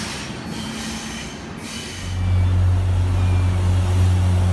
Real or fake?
real